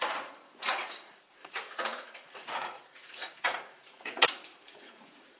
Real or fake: fake